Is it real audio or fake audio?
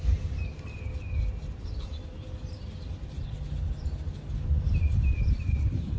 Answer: real